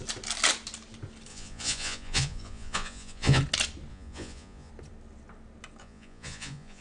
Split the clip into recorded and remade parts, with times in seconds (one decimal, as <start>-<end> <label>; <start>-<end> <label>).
0.0-1.3 recorded; 1.3-3.4 remade; 3.4-3.9 recorded; 3.9-4.7 remade; 4.7-5.8 recorded; 5.8-6.8 remade